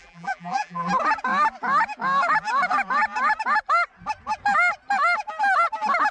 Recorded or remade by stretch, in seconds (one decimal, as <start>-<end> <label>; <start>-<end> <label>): 0.0-0.9 remade; 0.9-6.1 recorded